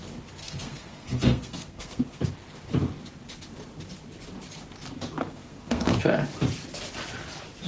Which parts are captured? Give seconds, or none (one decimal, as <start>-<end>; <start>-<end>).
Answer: 0.0-0.4; 2.3-5.2; 6.0-7.7